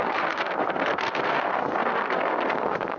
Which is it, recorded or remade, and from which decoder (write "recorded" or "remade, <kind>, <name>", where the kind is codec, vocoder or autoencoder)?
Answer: remade, codec, SNAC